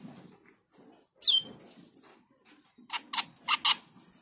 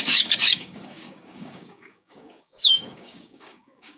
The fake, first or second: second